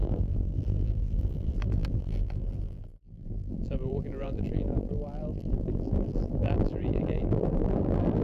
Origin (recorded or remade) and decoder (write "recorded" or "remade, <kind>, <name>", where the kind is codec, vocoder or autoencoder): remade, vocoder, BigVGAN v2